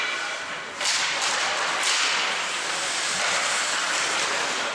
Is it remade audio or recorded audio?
recorded